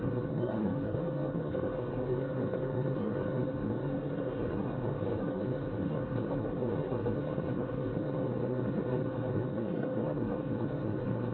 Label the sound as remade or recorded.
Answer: remade